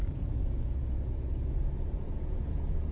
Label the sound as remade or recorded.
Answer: remade